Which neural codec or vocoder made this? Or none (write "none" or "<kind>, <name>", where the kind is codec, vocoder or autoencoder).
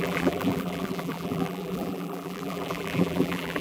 vocoder, BigVGAN v2